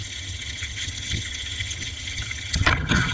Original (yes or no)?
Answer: no